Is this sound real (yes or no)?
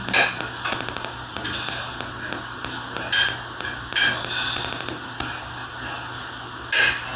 yes